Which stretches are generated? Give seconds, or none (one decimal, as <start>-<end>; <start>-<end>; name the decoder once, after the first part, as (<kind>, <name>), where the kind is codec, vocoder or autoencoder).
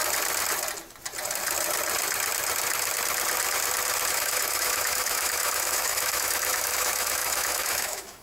4.1-8.2 (autoencoder, DAC-VAE)